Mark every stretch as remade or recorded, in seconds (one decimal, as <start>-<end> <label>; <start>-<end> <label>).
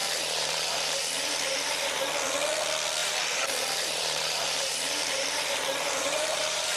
0.0-2.1 remade; 2.1-3.0 recorded; 3.0-6.8 remade